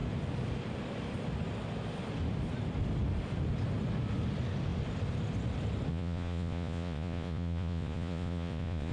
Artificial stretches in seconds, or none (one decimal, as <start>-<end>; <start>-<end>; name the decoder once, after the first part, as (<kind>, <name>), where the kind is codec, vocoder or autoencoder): 5.9-8.9 (vocoder, Vocos)